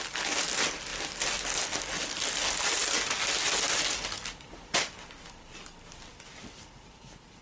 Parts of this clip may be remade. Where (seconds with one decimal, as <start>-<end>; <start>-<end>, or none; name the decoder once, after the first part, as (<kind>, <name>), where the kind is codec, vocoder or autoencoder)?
none